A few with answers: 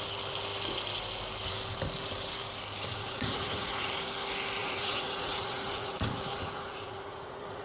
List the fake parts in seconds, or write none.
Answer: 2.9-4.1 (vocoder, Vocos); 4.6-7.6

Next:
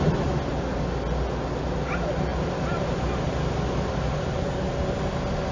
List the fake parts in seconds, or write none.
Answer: none